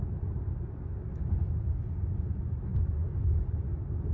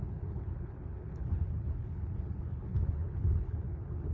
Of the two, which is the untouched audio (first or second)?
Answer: first